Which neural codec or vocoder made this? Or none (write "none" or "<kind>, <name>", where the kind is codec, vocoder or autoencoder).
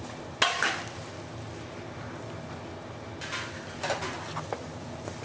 none